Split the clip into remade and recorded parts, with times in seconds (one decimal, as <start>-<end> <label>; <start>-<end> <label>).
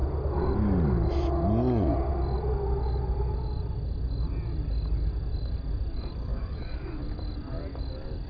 0.0-6.3 recorded; 6.3-7.0 remade; 7.0-8.3 recorded